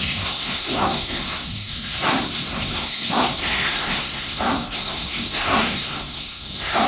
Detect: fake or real fake